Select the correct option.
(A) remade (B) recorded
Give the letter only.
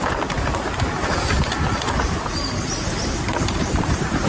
B